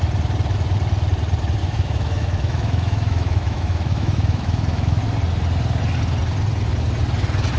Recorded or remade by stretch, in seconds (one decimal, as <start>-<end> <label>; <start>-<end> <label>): 0.0-1.6 recorded; 1.6-5.0 remade; 5.0-7.6 recorded